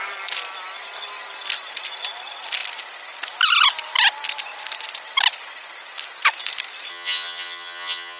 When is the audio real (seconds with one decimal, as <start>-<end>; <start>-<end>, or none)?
0.0-6.9